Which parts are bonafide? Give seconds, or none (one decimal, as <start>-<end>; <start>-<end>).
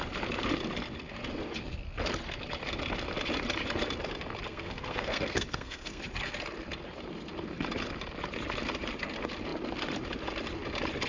0.0-4.5; 6.0-11.1